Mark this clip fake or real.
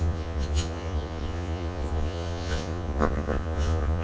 fake